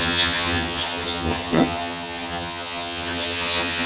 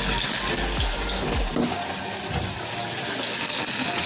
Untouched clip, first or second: second